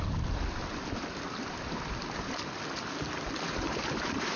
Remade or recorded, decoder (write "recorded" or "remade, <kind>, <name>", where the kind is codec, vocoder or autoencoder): recorded